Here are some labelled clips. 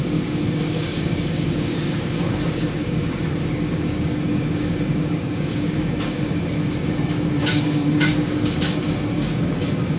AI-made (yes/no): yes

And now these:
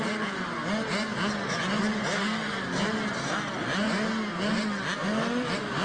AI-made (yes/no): no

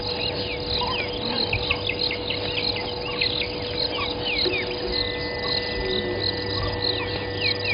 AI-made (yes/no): no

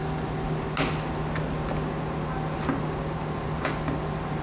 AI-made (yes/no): no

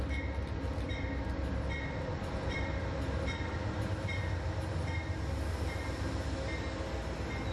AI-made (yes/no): no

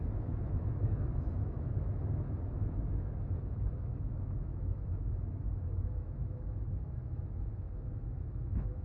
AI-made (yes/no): yes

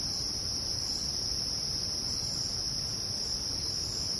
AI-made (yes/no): no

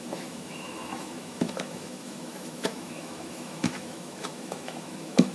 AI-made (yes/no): yes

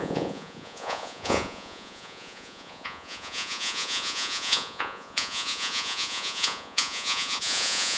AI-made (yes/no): yes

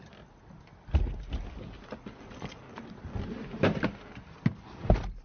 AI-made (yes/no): no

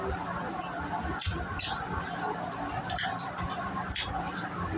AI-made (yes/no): no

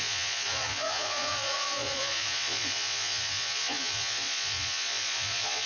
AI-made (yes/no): yes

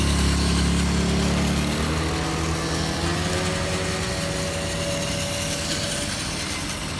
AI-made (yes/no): no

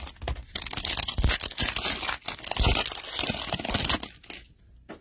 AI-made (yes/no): no